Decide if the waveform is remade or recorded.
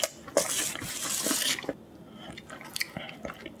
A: recorded